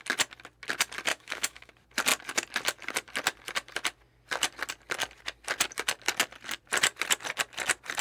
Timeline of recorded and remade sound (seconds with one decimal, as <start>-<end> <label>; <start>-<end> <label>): 0.0-1.1 recorded; 1.1-1.7 remade; 1.7-8.0 recorded